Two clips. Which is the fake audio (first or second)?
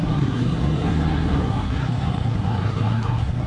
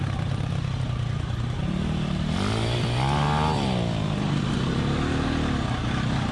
first